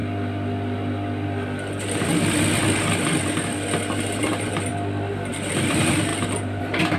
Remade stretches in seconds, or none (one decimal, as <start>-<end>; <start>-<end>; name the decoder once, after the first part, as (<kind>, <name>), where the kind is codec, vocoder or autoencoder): 4.2-4.7 (vocoder, BigVGAN v2); 5.3-7.0